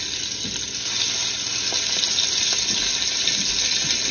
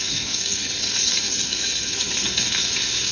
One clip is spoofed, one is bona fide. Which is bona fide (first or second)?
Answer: first